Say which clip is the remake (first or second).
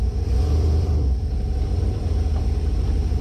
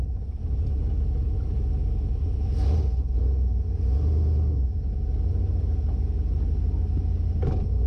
first